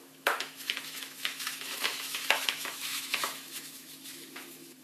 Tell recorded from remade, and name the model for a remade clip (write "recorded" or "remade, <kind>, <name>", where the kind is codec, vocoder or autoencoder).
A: remade, autoencoder, DAC-VAE